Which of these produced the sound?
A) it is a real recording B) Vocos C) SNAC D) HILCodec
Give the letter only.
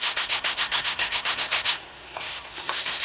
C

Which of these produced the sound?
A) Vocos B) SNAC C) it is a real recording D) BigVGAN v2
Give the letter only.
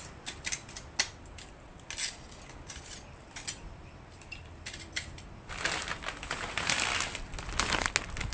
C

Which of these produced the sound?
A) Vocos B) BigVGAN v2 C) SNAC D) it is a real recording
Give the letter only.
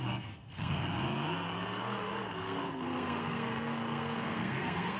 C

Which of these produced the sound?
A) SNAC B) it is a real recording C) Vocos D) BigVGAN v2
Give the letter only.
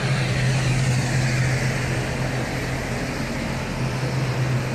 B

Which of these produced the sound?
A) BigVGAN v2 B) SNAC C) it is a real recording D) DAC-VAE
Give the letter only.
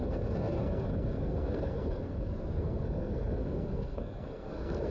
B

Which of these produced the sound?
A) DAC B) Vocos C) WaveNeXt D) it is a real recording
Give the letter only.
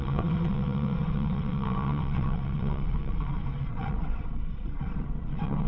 C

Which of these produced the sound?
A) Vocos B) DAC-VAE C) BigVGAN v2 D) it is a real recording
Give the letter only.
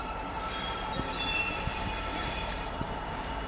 C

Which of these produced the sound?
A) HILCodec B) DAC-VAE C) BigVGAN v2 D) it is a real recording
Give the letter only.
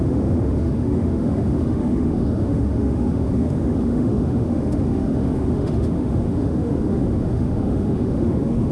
B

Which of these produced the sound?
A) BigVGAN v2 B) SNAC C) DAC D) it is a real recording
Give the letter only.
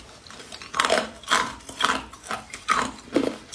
A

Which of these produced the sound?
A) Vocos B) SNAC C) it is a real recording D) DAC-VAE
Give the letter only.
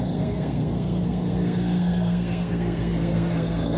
B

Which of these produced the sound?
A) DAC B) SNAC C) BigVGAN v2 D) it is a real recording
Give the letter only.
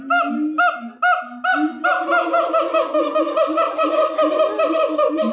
D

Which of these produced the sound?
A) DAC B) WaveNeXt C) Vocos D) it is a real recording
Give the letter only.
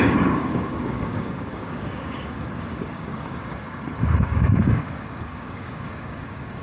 A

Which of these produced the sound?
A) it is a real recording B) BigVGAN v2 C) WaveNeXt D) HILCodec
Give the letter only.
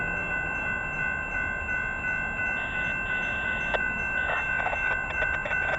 A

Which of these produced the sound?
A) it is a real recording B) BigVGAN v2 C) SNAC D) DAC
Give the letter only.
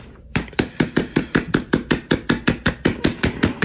B